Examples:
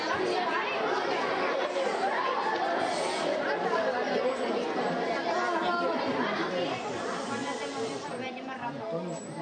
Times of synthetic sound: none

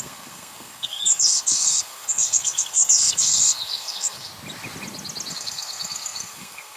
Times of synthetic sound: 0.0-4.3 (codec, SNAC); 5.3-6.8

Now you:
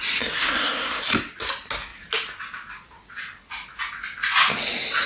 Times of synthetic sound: 0.4-1.0 (codec, SNAC)